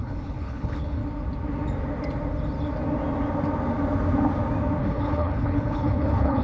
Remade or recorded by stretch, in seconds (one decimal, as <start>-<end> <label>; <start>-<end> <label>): 0.0-1.0 remade; 1.0-4.8 recorded; 4.8-6.4 remade